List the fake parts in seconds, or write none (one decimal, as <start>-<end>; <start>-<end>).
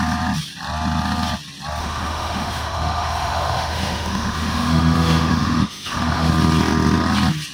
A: 1.8-6.3